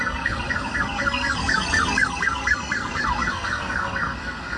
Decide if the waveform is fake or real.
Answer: fake